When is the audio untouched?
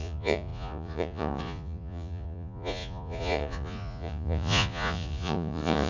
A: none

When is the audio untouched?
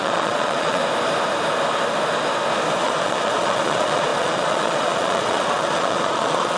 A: 0.8-2.8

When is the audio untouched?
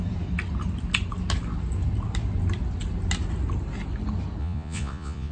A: 0.0-4.4